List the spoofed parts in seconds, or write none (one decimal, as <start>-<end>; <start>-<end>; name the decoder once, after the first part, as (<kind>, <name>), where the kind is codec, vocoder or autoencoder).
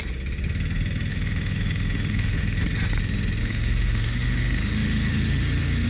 1.1-2.6 (autoencoder, DAC-VAE); 3.4-5.9